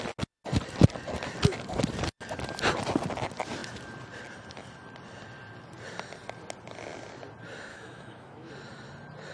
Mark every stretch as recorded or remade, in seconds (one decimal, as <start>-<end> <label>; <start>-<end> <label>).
0.0-7.7 recorded; 7.7-8.5 remade; 8.5-9.3 recorded